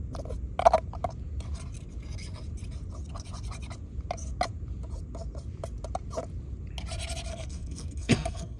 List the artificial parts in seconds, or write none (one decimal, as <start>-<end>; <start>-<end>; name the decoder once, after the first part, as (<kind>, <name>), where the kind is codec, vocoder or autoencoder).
7.3-8.6 (codec, SNAC)